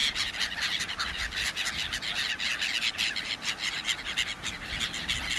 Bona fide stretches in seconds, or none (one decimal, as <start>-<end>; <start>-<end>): 0.0-5.4